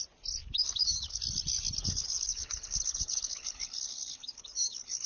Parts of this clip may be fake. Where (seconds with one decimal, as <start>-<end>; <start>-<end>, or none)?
0.4-1.2; 1.8-5.1